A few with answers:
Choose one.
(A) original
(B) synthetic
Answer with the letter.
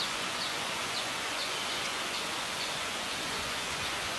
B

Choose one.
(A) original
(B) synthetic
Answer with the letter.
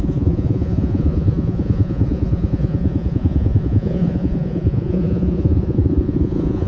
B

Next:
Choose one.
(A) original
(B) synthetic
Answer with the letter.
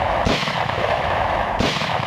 B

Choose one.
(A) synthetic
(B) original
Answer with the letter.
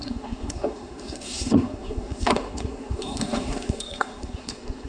A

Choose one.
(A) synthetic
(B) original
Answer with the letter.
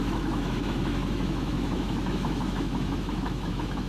A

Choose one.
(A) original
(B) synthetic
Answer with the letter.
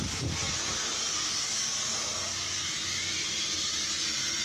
A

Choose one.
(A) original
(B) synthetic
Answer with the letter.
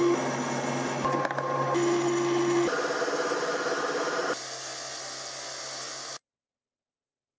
A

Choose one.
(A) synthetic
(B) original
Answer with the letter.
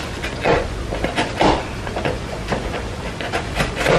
A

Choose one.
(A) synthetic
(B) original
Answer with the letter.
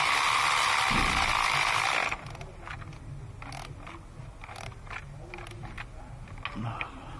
B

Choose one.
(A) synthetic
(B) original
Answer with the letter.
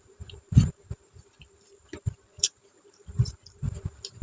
A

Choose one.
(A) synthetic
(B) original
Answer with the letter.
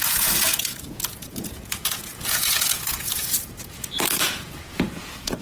A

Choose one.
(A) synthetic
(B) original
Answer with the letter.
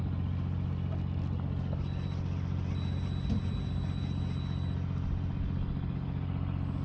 B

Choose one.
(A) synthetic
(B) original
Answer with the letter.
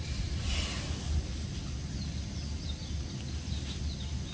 B